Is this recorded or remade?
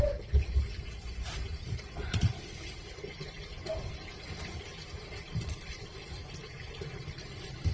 remade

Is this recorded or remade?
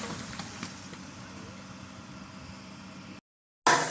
recorded